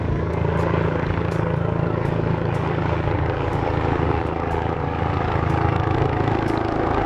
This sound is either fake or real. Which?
fake